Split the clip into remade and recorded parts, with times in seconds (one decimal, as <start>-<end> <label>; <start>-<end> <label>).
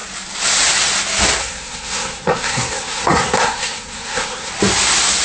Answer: 0.0-1.4 recorded; 1.4-4.5 remade; 4.5-5.2 recorded